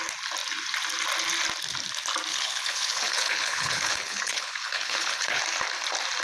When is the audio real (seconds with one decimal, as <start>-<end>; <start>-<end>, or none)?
0.0-2.3; 5.4-6.2